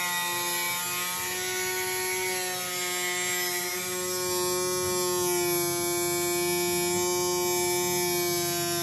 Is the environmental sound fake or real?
real